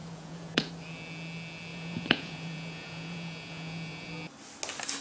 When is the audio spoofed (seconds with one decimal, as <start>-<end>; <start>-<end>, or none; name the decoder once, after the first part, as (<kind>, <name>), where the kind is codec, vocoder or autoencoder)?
0.0-0.7 (vocoder, Vocos); 1.7-4.1